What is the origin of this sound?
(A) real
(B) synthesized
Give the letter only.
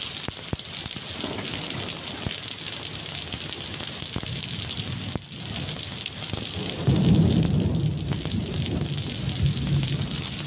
A